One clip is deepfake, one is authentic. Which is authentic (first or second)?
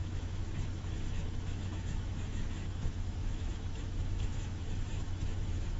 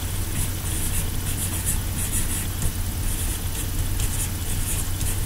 second